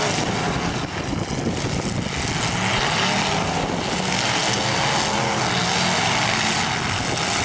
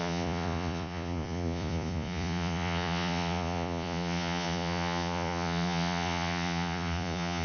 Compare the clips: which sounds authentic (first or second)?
first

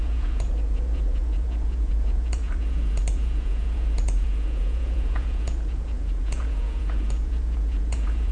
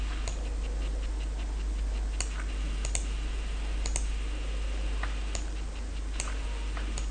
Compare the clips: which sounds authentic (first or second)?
second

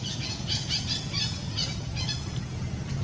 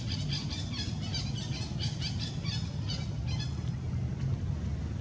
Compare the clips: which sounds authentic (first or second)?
second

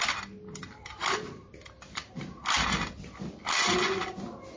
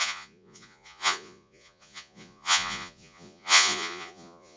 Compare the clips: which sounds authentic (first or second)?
first